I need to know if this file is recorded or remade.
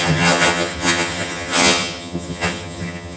remade